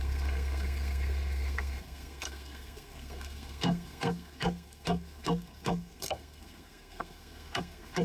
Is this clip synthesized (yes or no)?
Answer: yes